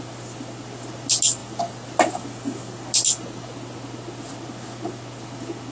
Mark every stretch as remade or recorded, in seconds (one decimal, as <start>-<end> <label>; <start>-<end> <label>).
0.0-5.7 recorded